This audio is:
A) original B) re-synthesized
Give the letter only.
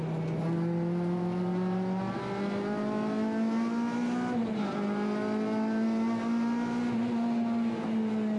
A